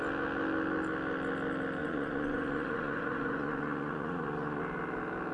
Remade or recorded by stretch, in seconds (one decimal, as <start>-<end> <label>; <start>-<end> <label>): 0.0-1.8 recorded; 1.8-4.6 remade; 4.6-5.3 recorded